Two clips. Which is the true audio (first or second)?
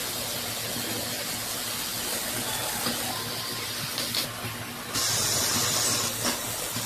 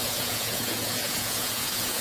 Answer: first